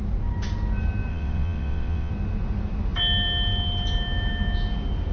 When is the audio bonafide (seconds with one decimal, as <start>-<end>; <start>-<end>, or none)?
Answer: 0.0-1.1; 2.1-5.1